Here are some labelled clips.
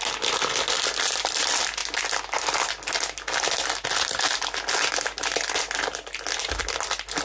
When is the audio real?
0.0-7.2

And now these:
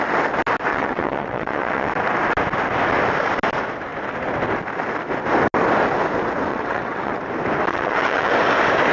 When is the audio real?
0.0-0.7; 1.9-6.5; 7.2-7.7; 8.3-8.9

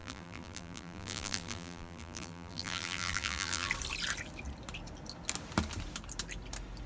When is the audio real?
3.7-6.9

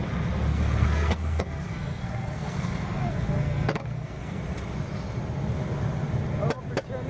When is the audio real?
0.0-0.5; 4.4-7.1

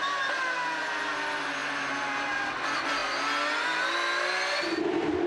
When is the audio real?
0.0-5.3

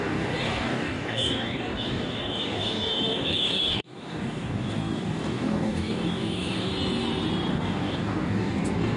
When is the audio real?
6.7-7.5

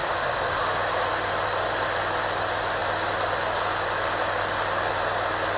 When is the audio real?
0.6-5.6